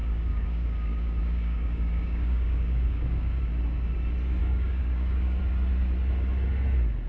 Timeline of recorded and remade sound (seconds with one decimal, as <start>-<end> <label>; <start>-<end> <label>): 0.0-3.4 remade; 3.4-4.4 recorded; 4.4-5.4 remade; 5.4-7.1 recorded